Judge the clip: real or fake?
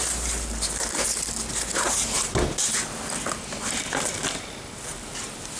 real